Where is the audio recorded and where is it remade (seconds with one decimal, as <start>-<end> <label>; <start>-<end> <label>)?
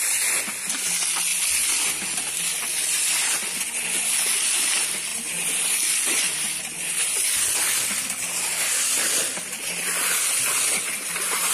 0.0-1.3 recorded; 1.3-2.2 remade; 2.2-5.1 recorded; 5.1-6.6 remade; 6.6-9.3 recorded; 9.3-9.9 remade; 9.9-11.5 recorded